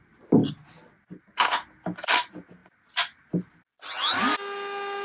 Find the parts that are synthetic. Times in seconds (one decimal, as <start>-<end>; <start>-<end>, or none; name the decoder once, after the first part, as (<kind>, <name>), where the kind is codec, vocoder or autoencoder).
none